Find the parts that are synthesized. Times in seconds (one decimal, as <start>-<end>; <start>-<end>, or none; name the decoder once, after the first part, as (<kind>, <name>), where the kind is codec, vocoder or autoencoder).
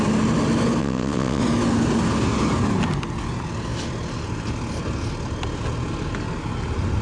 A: 0.8-1.4 (vocoder, WaveNeXt)